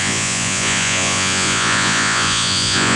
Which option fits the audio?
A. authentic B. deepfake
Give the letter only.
B